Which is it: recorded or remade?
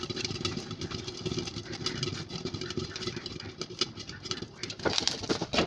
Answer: remade